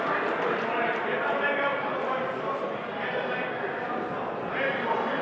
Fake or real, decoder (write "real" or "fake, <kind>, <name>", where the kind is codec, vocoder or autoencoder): real